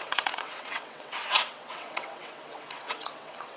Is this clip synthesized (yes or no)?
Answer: yes